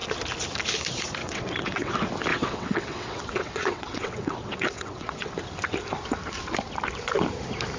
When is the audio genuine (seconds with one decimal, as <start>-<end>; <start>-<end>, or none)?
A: 0.0-1.2; 1.9-2.3; 5.3-7.8